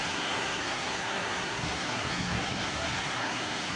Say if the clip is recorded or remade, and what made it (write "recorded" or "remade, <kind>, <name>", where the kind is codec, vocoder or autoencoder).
remade, codec, SNAC